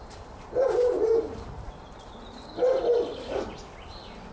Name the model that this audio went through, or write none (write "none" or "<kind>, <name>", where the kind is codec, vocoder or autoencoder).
none